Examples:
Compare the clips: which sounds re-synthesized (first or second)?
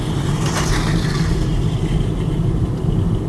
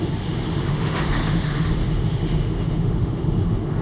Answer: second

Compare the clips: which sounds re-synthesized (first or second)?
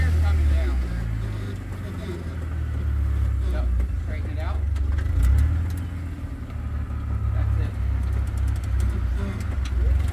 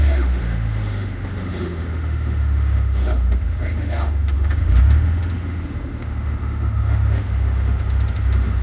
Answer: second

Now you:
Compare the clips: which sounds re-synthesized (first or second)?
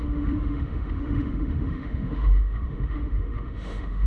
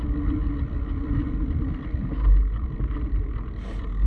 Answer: first